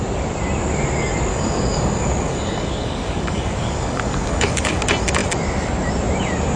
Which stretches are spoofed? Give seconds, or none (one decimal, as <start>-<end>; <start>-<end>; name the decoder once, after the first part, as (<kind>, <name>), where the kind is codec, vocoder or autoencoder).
1.3-4.8 (codec, DAC)